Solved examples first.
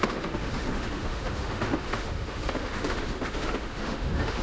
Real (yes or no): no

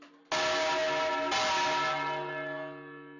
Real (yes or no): yes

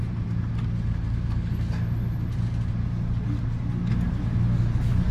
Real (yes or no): yes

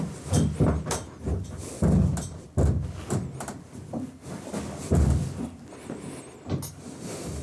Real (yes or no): yes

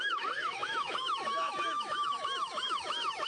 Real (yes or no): no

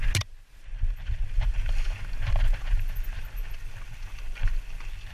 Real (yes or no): yes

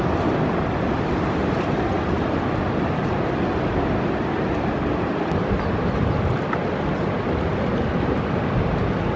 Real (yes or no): yes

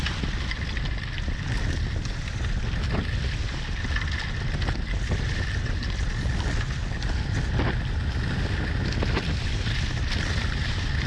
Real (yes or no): yes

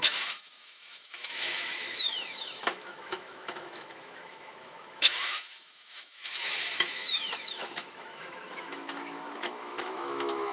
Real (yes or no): no